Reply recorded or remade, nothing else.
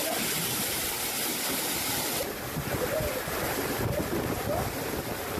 recorded